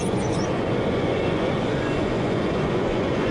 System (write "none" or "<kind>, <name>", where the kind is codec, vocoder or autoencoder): vocoder, Vocos